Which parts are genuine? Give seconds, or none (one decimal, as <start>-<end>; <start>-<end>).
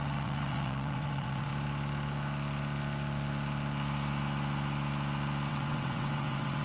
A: 1.5-5.5